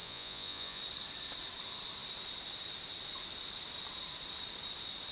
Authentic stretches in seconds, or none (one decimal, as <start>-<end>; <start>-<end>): 0.8-5.1